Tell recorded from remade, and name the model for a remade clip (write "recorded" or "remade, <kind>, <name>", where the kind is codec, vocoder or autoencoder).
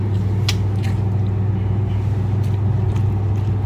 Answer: recorded